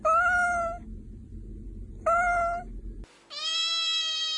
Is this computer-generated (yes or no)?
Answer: no